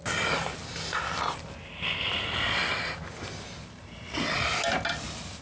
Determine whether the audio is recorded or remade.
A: recorded